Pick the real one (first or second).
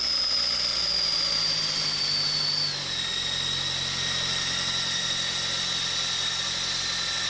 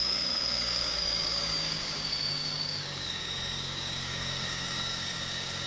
first